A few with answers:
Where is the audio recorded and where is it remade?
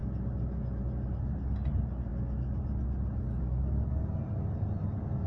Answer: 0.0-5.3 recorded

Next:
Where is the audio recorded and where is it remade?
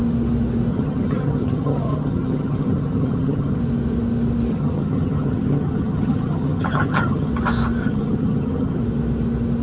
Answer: 0.0-0.7 recorded; 0.7-3.6 remade; 3.6-4.5 recorded; 4.5-7.3 remade; 7.3-7.8 recorded; 7.8-8.8 remade; 8.8-9.6 recorded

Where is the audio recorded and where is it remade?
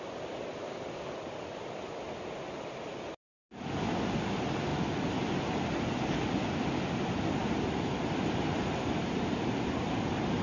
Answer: 0.0-10.4 recorded